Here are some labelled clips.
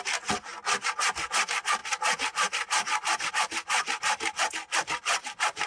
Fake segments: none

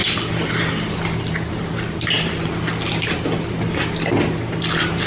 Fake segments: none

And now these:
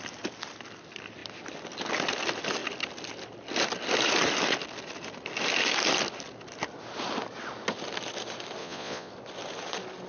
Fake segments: 8.6-9.1 (vocoder, Vocos)

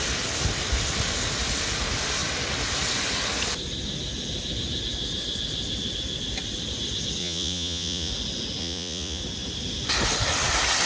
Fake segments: 7.2-8.1 (vocoder, Vocos); 8.6-9.2